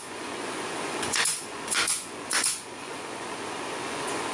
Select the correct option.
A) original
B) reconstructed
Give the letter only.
B